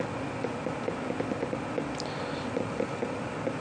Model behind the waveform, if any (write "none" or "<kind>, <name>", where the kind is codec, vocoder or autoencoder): none